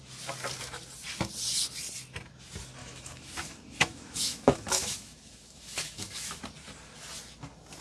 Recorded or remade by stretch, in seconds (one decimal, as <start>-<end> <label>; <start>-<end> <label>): 0.0-2.8 recorded; 2.8-6.4 remade; 6.4-7.8 recorded